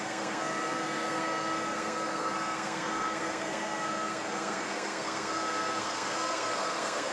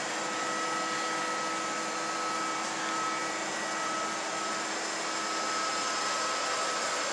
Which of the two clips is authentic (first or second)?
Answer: second